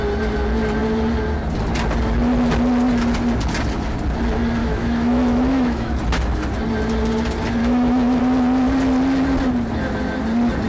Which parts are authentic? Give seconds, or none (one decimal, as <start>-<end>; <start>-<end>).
0.0-4.6; 5.9-7.6; 8.2-10.7